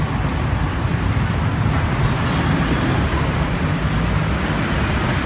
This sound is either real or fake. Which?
real